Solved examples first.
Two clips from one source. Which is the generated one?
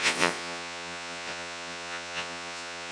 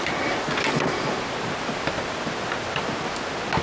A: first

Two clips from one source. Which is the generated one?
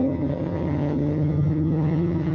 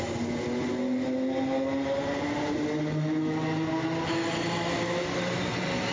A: first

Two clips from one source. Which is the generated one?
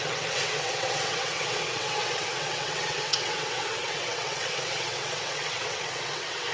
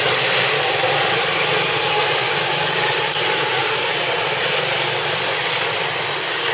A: first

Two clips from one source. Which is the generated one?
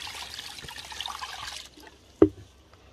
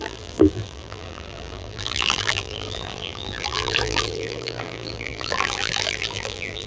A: second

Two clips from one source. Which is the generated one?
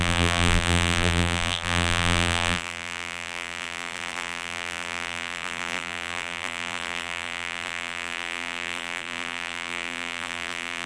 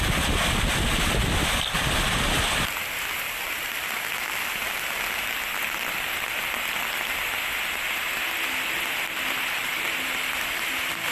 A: first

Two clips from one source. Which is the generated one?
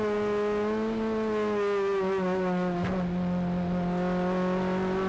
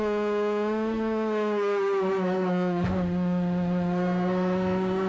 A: second